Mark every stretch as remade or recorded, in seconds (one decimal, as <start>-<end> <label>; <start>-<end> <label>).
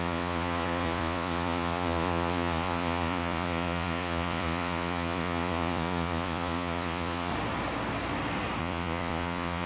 0.0-7.3 remade; 7.3-8.6 recorded; 8.6-9.7 remade